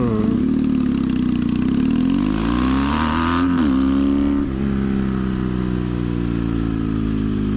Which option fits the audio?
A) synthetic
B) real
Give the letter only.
B